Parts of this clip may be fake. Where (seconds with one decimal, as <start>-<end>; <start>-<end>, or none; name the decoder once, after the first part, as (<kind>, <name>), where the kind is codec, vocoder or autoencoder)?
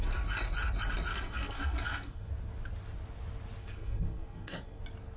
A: 1.1-2.3 (codec, SNAC); 3.6-4.8